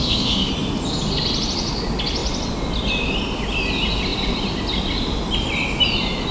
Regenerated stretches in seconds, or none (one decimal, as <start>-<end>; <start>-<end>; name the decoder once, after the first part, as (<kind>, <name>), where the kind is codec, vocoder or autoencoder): 0.0-0.5 (autoencoder, DAC-VAE)